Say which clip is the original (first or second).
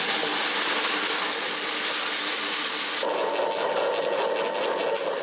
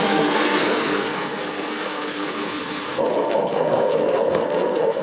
first